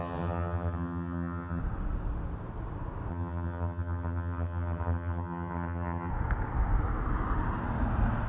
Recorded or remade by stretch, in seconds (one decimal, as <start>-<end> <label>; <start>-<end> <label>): 0.0-1.6 remade; 1.6-3.1 recorded; 3.1-6.1 remade; 6.1-8.3 recorded